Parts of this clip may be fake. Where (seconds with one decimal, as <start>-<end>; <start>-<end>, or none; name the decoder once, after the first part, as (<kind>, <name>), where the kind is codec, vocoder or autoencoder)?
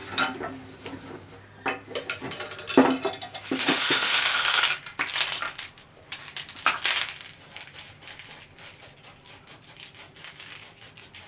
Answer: 3.6-4.6 (autoencoder, DAC-VAE)